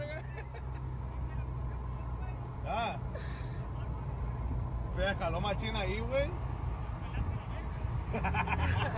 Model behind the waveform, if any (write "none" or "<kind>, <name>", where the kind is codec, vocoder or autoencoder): none